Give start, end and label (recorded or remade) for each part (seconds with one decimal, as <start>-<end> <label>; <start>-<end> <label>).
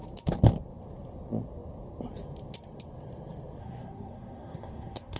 0.0-3.6 recorded; 3.6-5.2 remade